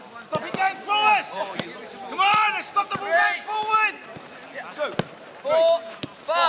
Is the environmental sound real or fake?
real